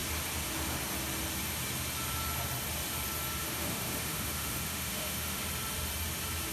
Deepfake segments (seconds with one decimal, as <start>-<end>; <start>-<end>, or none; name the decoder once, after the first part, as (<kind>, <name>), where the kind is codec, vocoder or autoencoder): 3.4-5.4 (autoencoder, DAC-VAE)